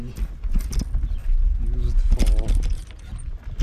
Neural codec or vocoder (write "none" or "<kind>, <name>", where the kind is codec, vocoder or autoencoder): none